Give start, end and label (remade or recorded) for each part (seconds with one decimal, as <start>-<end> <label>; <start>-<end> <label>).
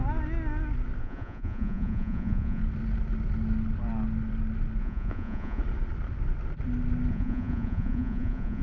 0.0-1.0 recorded; 1.0-2.6 remade; 2.6-4.8 recorded; 4.8-5.6 remade; 5.6-7.1 recorded; 7.1-8.6 remade